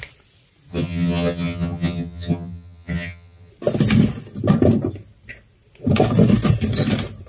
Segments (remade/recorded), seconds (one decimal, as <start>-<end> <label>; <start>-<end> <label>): 0.0-0.7 recorded; 0.7-3.5 remade; 3.5-7.3 recorded